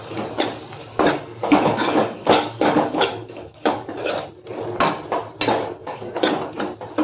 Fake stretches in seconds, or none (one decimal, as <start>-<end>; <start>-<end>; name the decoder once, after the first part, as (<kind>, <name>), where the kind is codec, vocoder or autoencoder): 1.3-4.1 (codec, DAC); 5.8-6.3